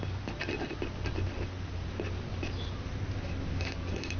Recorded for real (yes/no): yes